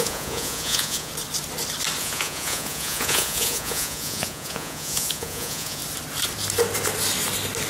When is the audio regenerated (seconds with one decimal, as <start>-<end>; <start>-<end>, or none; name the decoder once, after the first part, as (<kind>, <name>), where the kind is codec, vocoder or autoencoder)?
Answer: 0.0-1.1 (vocoder, Vocos); 2.0-5.8